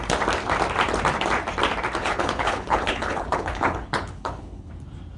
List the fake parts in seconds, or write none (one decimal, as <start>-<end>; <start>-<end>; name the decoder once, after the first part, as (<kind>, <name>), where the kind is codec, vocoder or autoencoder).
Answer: 2.0-4.7 (codec, HILCodec)